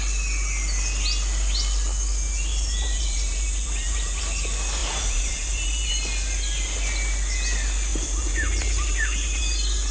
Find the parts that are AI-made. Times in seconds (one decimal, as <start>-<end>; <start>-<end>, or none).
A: 2.5-4.2; 4.8-5.9; 7.9-9.9